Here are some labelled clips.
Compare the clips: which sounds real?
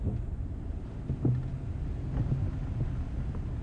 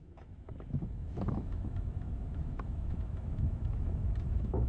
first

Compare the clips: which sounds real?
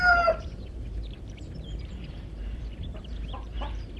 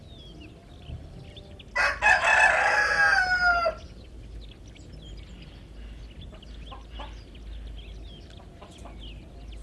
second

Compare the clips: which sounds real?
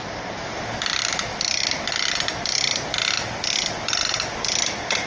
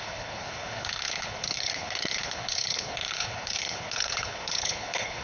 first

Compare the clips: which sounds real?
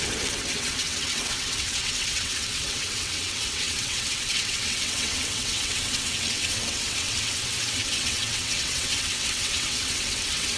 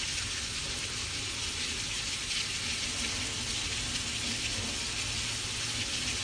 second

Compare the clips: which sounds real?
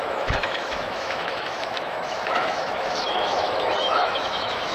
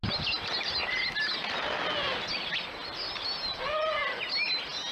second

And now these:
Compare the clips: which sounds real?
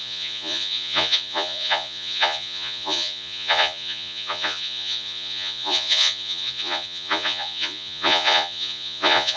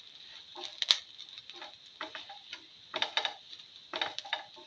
second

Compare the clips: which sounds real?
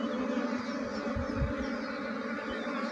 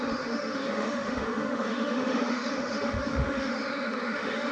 first